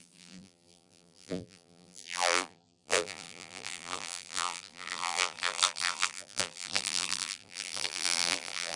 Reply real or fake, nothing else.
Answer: fake